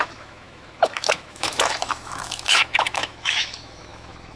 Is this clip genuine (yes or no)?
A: no